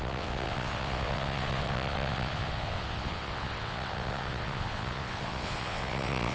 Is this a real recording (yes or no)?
no